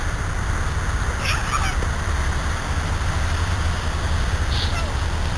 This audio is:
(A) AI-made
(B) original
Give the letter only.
B